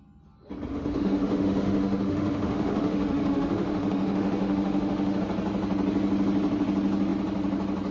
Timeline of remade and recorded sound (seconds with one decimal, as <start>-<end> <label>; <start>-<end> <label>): 0.0-0.7 recorded; 0.7-5.2 remade; 5.2-7.9 recorded